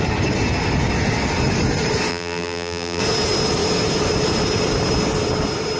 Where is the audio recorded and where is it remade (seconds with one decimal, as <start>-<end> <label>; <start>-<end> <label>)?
0.0-2.1 recorded; 2.1-3.0 remade; 3.0-5.8 recorded

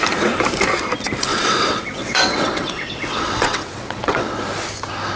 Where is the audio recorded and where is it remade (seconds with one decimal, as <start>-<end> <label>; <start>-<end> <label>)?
0.0-1.3 recorded; 1.3-4.4 remade; 4.4-5.2 recorded

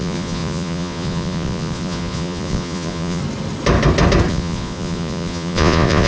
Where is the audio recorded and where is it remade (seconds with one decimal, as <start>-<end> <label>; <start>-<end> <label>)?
0.0-3.2 remade; 3.2-4.3 recorded; 4.3-6.1 remade

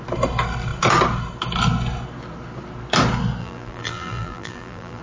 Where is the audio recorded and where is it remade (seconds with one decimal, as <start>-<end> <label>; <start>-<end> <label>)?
0.0-3.4 recorded; 3.4-5.0 remade